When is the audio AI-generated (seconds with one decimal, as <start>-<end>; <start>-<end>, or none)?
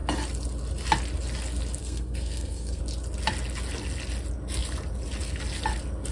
1.8-2.8